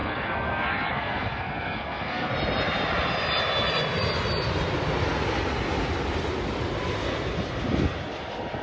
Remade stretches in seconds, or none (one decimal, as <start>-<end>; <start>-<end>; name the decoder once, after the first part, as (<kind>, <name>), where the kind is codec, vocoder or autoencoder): 0.0-2.3 (codec, SNAC)